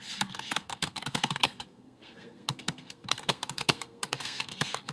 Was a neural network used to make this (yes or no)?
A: yes